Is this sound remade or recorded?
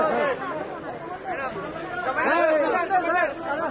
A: recorded